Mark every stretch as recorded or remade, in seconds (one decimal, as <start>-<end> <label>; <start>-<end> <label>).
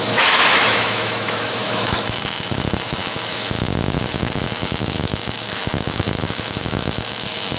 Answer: 0.0-7.6 remade